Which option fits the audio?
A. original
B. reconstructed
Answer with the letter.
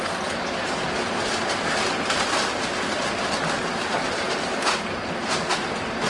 A